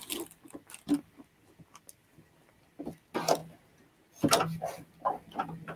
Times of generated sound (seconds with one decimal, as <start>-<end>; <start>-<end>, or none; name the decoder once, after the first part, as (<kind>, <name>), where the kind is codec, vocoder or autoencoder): none